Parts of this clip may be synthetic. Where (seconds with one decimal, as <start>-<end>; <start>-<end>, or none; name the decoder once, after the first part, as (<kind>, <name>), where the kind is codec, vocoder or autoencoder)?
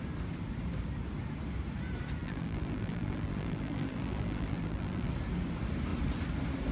2.2-5.1 (vocoder, BigVGAN v2)